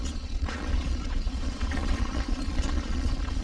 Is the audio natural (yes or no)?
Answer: no